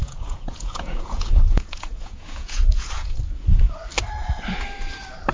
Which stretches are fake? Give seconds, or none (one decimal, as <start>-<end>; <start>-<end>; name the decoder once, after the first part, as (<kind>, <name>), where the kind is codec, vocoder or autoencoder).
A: 0.0-3.2 (vocoder, Vocos)